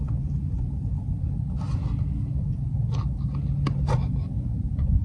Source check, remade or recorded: recorded